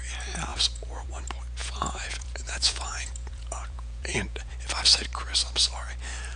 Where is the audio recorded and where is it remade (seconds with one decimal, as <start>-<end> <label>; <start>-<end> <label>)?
0.0-0.5 recorded; 0.5-1.2 remade; 1.2-1.6 recorded; 1.6-4.5 remade; 4.5-6.4 recorded